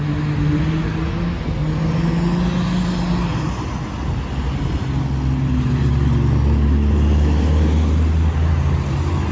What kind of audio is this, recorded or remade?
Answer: recorded